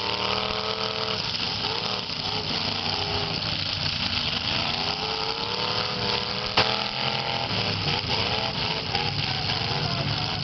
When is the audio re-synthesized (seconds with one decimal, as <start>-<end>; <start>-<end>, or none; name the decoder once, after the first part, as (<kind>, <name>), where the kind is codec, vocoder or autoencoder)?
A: none